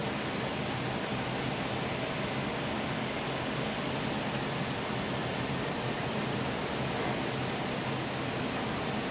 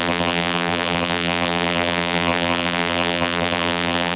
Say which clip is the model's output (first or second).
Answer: second